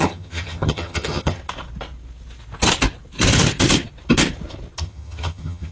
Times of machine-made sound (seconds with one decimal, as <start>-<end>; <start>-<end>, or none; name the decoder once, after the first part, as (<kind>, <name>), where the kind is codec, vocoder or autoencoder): 0.0-1.4 (vocoder, HiFi-GAN); 4.8-5.7